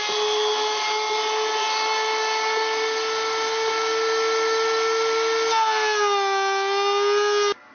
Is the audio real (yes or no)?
yes